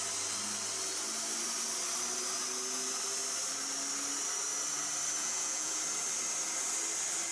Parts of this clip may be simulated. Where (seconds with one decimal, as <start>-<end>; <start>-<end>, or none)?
5.2-5.8